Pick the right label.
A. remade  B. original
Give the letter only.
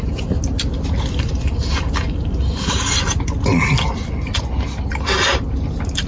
B